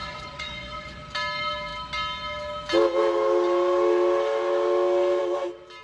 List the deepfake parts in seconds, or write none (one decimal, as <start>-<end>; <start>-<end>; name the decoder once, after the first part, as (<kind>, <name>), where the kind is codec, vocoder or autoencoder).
0.0-1.0 (vocoder, Vocos)